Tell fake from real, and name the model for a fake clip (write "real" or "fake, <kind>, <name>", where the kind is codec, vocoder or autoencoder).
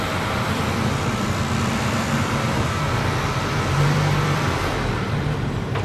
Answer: fake, vocoder, BigVGAN v2